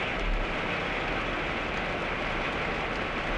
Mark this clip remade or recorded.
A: recorded